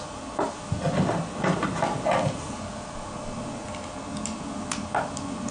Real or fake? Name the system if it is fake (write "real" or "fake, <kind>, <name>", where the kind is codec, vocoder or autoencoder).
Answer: real